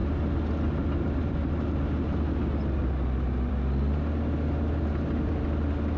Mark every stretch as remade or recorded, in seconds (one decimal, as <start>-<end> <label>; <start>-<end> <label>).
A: 0.0-6.0 recorded